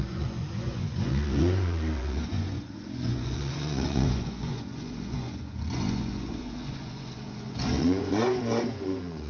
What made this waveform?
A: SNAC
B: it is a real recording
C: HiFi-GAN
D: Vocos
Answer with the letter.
D